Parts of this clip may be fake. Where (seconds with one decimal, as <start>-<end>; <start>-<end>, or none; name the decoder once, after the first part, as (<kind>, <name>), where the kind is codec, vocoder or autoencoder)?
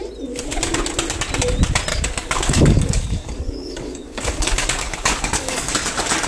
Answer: 1.9-5.7 (codec, DAC)